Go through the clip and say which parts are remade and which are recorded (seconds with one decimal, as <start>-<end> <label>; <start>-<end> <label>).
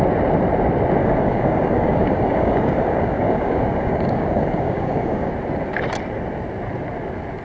0.0-1.0 recorded; 1.0-5.3 remade; 5.3-7.4 recorded